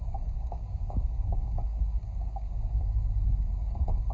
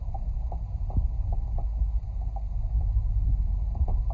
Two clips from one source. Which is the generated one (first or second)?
first